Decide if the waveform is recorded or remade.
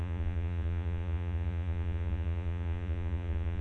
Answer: remade